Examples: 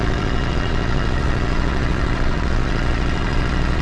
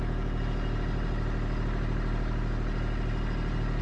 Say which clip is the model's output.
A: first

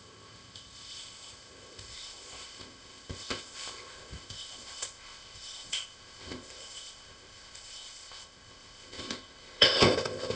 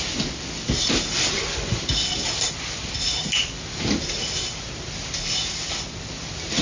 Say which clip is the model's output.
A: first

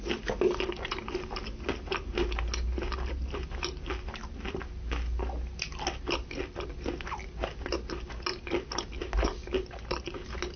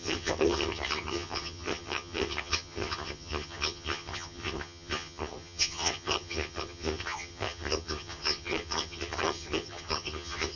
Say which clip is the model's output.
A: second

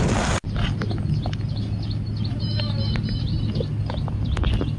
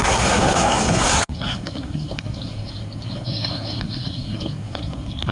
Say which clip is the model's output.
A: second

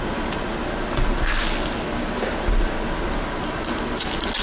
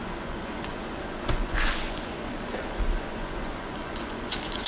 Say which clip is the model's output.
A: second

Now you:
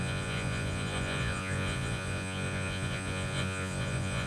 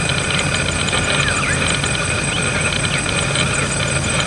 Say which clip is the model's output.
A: first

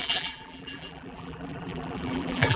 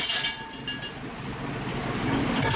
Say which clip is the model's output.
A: first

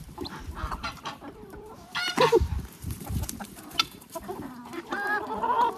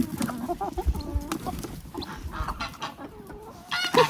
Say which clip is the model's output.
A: first